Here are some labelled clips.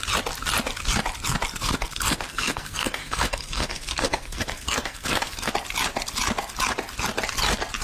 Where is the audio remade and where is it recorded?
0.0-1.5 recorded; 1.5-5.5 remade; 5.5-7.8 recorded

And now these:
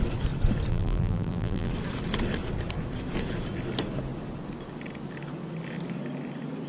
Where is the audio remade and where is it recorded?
0.0-0.7 recorded; 0.7-1.7 remade; 1.7-6.7 recorded

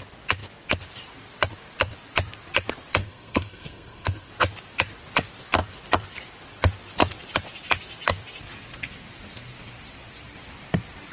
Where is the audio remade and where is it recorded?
0.0-3.0 recorded; 3.0-4.3 remade; 4.3-11.1 recorded

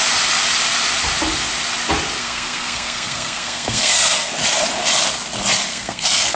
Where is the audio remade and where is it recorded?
0.0-2.2 recorded; 2.2-4.3 remade; 4.3-5.7 recorded; 5.7-6.4 remade

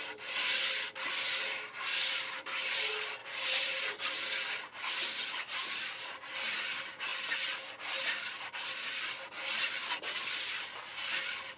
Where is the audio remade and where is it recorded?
0.0-3.2 recorded; 3.2-4.1 remade; 4.1-11.6 recorded

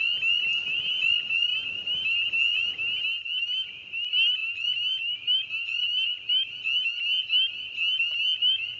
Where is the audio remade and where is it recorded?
0.0-8.8 recorded

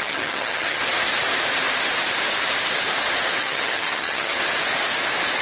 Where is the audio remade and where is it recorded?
0.0-0.8 remade; 0.8-3.4 recorded; 3.4-4.3 remade; 4.3-5.4 recorded